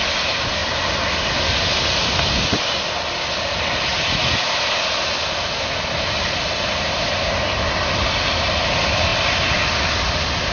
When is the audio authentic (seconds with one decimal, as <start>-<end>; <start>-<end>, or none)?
0.0-10.5